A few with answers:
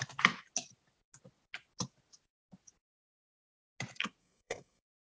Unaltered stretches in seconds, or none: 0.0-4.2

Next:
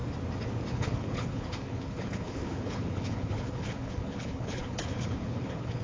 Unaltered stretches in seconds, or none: 0.0-0.7

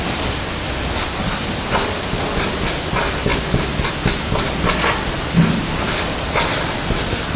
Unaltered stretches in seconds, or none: 0.0-7.4

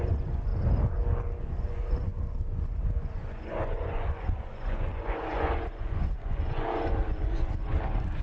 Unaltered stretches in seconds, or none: 0.5-1.4

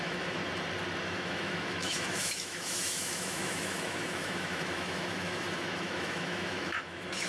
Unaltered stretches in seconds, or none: 0.4-1.0

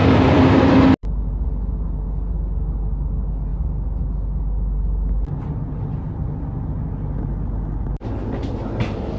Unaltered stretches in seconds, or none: 0.0-9.2

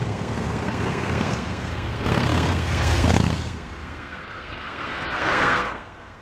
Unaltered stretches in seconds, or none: none

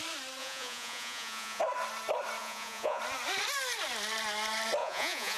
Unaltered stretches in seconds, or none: 0.0-0.4; 1.6-2.4; 3.0-4.8